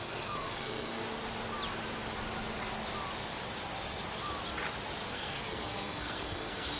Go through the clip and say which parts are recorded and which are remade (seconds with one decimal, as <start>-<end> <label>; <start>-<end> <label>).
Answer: 0.0-1.0 remade; 1.0-5.1 recorded; 5.1-6.8 remade